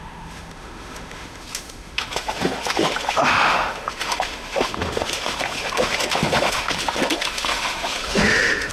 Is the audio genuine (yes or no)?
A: no